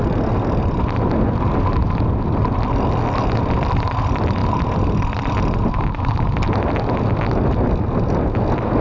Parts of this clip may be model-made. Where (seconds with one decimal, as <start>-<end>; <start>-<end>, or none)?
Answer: none